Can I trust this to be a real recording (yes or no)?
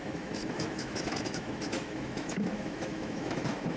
no